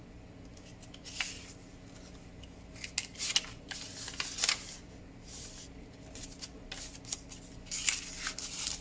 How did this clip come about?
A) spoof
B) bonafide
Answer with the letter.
B